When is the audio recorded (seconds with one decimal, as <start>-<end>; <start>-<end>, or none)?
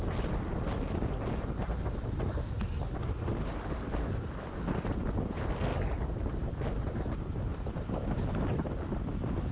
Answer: 0.0-9.5